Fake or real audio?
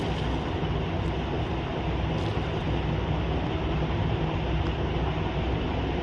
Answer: real